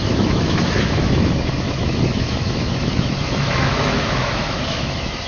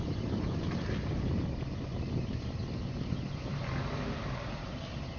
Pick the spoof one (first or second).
first